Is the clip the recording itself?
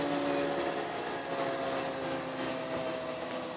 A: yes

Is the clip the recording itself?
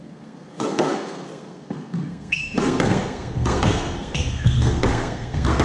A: no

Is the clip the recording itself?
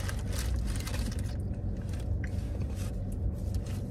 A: yes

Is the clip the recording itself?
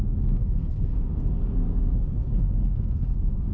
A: no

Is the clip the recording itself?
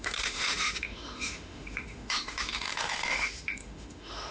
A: no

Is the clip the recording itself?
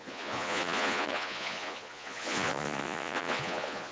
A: no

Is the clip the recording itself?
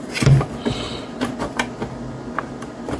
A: yes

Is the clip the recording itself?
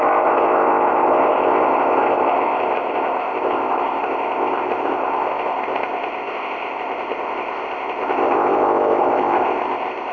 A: no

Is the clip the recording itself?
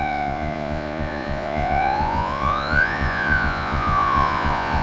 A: no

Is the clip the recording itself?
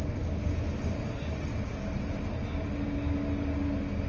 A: yes